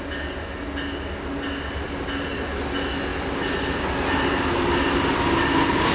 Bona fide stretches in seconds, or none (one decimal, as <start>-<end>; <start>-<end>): 0.0-5.9